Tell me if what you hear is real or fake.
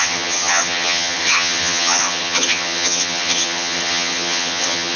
fake